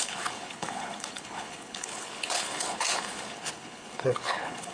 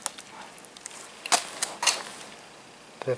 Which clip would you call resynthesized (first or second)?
first